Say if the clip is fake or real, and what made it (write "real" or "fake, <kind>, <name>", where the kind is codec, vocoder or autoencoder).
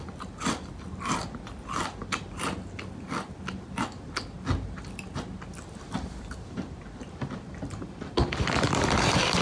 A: real